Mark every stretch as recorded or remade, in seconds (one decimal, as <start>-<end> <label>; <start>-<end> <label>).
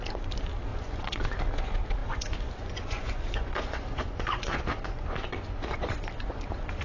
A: 0.0-0.7 recorded; 0.7-1.4 remade; 1.4-2.0 recorded; 2.0-6.1 remade; 6.1-6.8 recorded